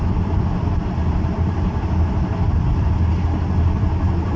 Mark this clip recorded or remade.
recorded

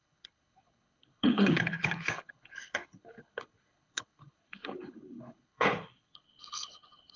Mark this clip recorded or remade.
remade